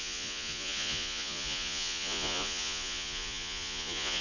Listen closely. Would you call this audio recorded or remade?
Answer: remade